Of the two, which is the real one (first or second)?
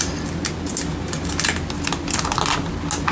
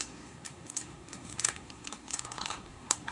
first